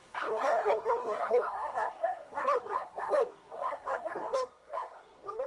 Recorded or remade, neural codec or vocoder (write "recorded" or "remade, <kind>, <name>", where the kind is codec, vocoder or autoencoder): remade, codec, SNAC